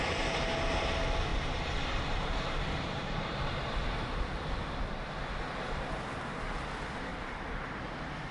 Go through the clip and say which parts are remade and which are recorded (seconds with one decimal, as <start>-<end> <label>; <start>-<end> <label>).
0.0-1.3 recorded; 1.3-4.2 remade; 4.2-7.1 recorded; 7.1-7.9 remade; 7.9-8.3 recorded